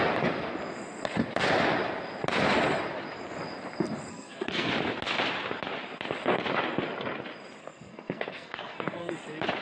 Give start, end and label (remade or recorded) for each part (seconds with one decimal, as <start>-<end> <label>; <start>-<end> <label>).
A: 0.0-4.1 recorded; 4.1-4.7 remade; 4.7-7.6 recorded; 7.6-9.1 remade; 9.1-9.6 recorded